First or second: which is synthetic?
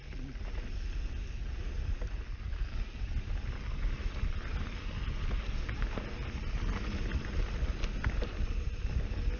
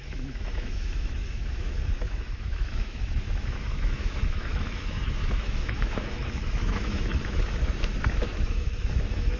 second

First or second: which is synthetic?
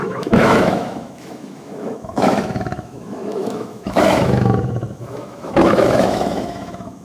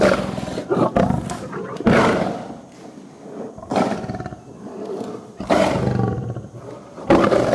first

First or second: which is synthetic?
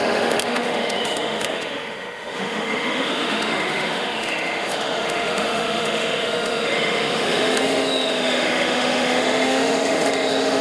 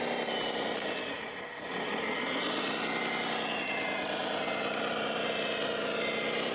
first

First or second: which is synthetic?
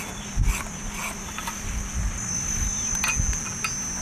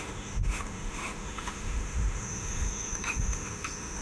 second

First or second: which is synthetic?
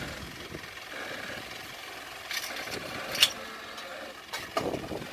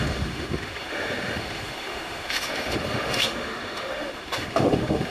second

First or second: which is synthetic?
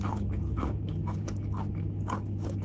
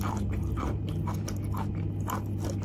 first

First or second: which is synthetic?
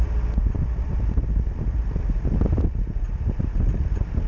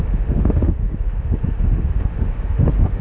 second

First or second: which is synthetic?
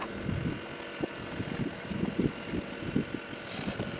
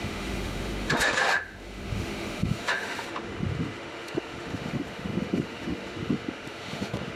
second